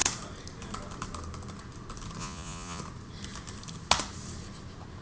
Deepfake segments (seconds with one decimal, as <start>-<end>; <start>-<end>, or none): 2.2-2.8